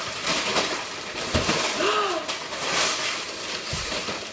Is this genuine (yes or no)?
yes